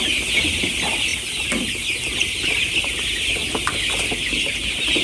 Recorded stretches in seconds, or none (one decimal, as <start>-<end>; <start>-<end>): 0.0-5.0